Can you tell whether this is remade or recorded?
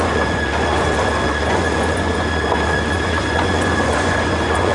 remade